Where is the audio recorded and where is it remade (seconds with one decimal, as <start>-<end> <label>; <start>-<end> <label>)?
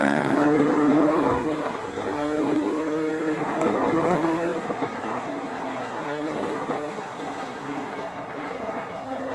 0.0-9.3 remade